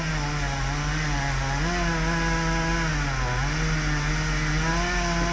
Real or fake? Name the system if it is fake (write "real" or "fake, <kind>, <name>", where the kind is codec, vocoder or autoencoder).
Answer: real